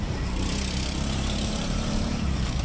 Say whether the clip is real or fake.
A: fake